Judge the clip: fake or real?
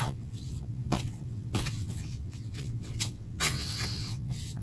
fake